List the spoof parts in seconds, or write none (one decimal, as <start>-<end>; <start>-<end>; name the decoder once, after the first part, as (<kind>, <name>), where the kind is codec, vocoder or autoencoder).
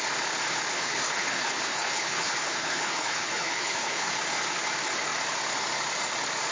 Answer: 0.7-4.2 (codec, HILCodec)